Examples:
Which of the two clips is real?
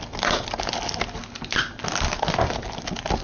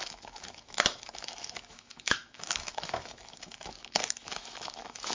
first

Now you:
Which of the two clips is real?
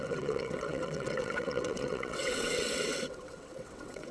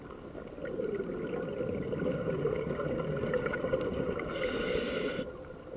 second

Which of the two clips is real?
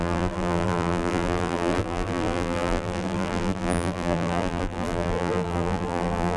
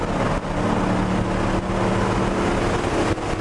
second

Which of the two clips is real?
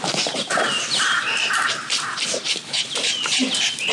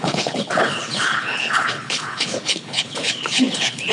first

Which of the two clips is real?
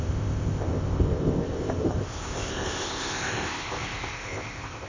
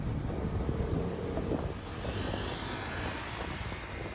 second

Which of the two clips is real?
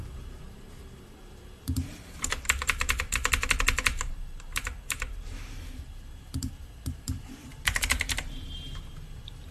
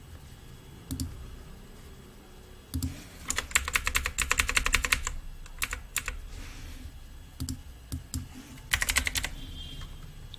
second